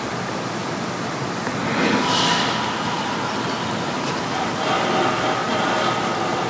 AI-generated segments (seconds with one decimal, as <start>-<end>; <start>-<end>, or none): none